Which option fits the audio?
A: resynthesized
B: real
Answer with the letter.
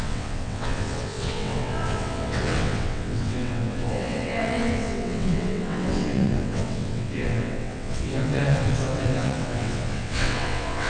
A